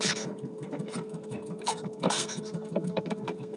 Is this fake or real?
fake